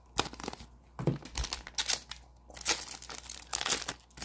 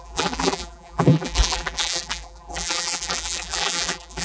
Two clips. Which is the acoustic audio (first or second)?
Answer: first